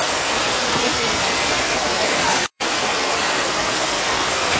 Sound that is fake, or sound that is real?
fake